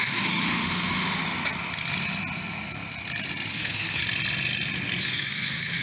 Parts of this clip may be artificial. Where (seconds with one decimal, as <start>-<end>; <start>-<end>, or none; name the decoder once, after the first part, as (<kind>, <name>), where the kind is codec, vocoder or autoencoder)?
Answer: 0.0-1.2 (autoencoder, DAC-VAE); 3.5-4.0; 5.0-5.8